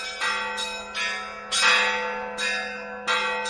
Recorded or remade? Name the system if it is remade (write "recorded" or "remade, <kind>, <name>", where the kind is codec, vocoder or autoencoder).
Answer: recorded